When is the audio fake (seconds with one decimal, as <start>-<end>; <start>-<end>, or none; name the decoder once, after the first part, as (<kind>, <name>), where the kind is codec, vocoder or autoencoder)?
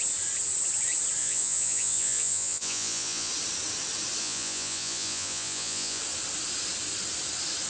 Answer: 1.2-3.3 (vocoder, Vocos); 4.2-6.0